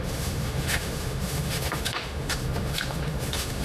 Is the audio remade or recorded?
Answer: remade